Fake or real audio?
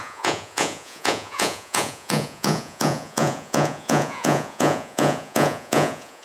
fake